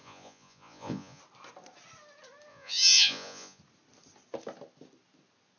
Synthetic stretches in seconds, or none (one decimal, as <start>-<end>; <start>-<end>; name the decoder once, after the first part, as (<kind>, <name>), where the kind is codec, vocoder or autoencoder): 0.0-1.2 (vocoder, Vocos); 2.5-3.6